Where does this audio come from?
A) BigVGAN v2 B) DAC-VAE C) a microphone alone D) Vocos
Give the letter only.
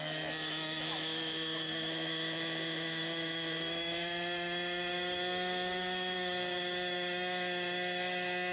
B